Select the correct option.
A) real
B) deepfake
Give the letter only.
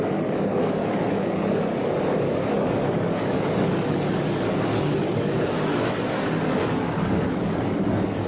B